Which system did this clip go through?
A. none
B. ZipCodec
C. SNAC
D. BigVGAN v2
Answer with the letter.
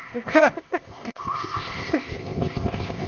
B